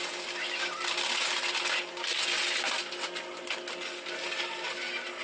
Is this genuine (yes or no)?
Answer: yes